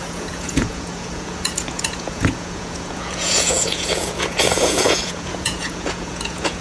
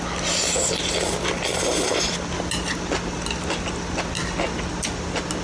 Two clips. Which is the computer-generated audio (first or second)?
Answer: first